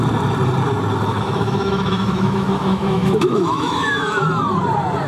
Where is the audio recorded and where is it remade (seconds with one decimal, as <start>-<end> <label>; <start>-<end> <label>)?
0.0-1.1 recorded; 1.1-4.2 remade; 4.2-5.1 recorded